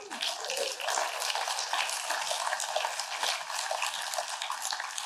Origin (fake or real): real